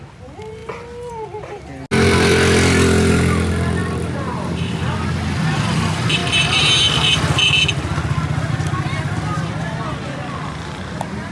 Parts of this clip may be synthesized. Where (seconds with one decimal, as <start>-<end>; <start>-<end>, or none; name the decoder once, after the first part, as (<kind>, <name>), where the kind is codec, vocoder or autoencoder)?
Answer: 3.8-4.7 (vocoder, BigVGAN v2)